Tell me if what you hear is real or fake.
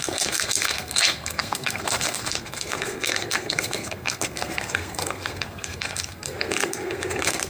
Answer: fake